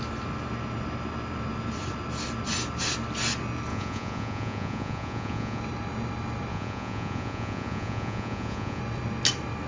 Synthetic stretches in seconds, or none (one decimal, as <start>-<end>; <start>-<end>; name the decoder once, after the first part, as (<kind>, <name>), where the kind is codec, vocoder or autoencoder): 3.7-5.6 (vocoder, Vocos); 6.5-8.8